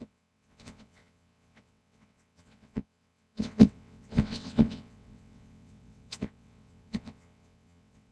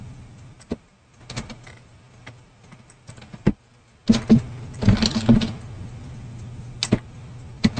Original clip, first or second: second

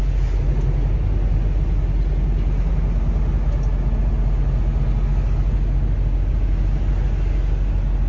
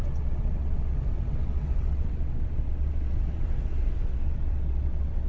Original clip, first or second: first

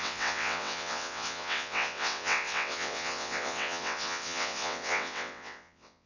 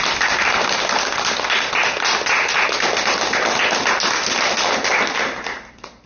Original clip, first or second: second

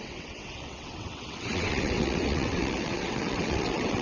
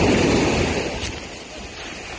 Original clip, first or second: second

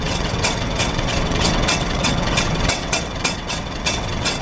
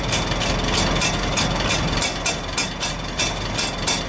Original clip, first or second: second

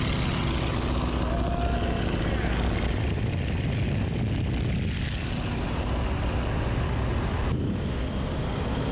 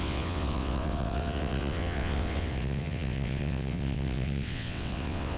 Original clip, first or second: first